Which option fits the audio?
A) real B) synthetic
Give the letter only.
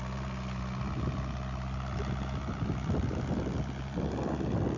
A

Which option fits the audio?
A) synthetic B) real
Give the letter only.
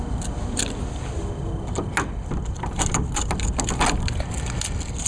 B